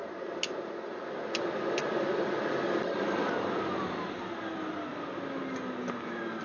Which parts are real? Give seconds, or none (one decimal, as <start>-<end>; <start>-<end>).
0.0-6.4